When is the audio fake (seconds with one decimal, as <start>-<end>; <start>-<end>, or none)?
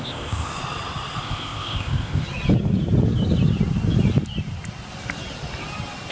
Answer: 0.0-0.5; 1.2-2.2